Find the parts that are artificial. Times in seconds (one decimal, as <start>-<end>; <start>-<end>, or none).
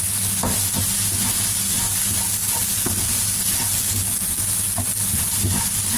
none